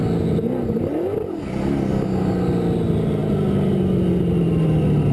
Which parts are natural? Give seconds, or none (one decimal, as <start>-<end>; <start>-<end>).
0.0-5.1